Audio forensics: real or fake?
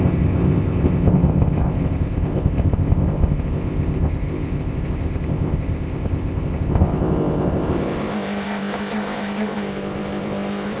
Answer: fake